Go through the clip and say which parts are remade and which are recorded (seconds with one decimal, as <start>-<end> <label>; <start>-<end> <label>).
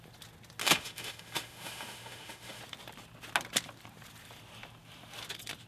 0.0-0.6 recorded; 0.6-2.6 remade; 2.6-5.7 recorded